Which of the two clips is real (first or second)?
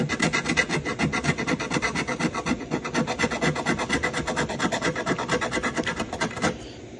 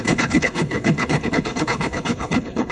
first